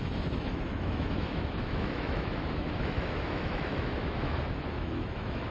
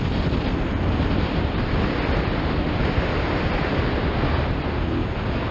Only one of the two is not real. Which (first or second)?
first